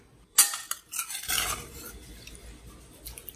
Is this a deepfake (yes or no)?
no